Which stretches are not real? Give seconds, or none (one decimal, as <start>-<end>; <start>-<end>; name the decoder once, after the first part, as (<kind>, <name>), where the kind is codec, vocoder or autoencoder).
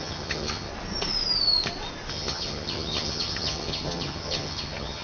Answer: 0.0-0.7 (vocoder, HiFi-GAN); 2.1-5.0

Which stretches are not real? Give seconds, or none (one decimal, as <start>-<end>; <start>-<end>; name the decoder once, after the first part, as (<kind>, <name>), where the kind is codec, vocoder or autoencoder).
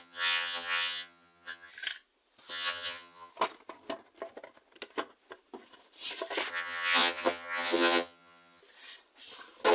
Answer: 0.0-1.7 (vocoder, HiFi-GAN); 2.5-3.3; 6.5-8.6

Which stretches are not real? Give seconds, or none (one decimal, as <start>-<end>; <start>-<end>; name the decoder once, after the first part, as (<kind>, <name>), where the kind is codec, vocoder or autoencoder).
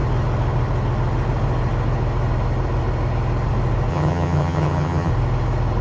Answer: 3.9-5.1 (vocoder, HiFi-GAN)